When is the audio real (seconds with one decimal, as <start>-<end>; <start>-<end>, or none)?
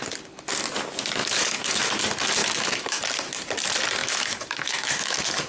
0.0-1.2; 1.9-2.4; 3.0-4.0